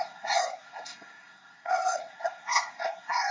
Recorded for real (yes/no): no